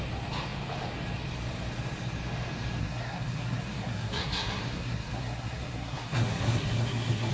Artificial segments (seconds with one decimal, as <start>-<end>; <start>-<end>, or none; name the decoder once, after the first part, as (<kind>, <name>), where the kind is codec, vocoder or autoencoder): 2.8-7.3 (codec, SNAC)